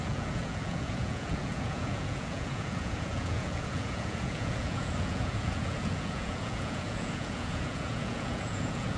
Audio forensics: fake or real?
fake